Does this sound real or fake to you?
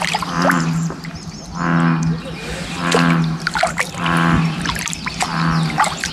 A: real